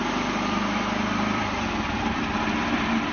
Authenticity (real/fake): fake